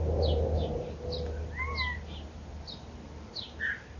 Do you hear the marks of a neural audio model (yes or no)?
no